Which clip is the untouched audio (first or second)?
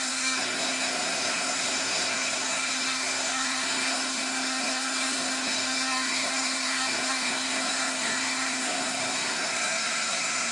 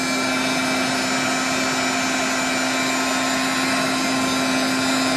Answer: second